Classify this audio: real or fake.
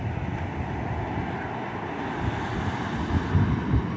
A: real